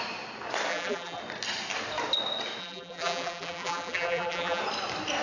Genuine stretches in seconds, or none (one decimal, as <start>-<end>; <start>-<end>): 0.0-0.7; 1.2-2.6; 4.6-5.2